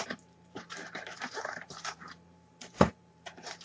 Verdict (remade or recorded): remade